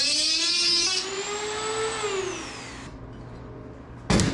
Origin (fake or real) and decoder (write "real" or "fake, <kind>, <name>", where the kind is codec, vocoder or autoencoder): real